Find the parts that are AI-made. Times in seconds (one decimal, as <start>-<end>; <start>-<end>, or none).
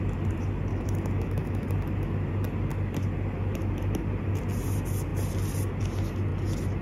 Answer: 0.7-1.6